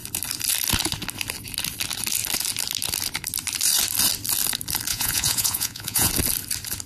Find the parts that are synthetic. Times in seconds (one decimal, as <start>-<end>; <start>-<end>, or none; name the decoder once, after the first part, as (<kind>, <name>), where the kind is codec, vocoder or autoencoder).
4.9-6.1 (vocoder, Vocos)